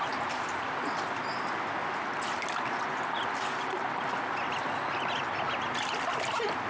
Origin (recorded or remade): recorded